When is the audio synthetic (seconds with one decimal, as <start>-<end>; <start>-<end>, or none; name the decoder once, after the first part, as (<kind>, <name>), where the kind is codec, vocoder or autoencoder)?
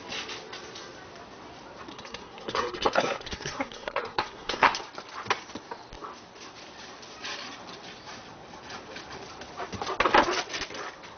1.9-4.8 (codec, SNAC)